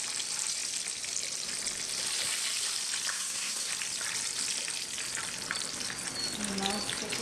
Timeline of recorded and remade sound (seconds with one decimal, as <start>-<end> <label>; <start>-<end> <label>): 0.0-3.1 recorded; 3.1-3.7 remade; 3.7-7.2 recorded